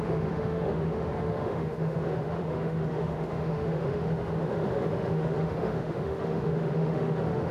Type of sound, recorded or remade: remade